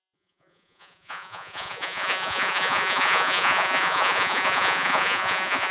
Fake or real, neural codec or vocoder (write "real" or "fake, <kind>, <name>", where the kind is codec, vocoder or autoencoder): fake, vocoder, Vocos